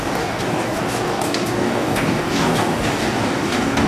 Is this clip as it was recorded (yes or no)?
no